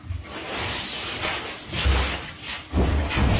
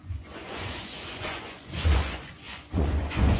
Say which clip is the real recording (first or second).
first